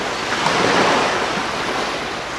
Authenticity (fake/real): real